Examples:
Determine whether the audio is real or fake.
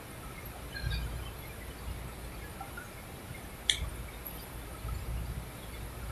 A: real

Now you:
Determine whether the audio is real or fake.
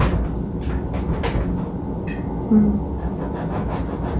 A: real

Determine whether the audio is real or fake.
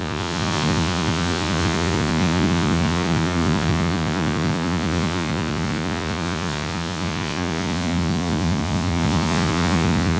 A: fake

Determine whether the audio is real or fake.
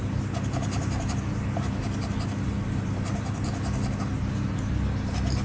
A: real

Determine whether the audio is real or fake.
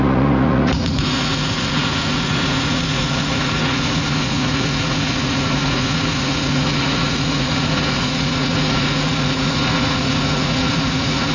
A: fake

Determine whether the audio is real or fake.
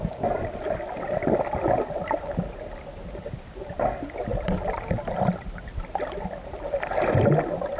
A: real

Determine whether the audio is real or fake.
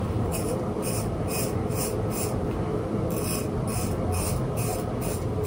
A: real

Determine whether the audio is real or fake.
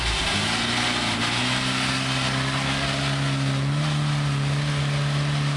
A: real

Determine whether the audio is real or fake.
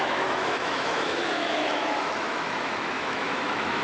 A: fake